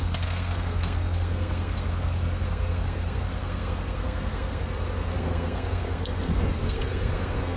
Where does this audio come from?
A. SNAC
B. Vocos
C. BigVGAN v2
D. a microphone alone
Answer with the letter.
A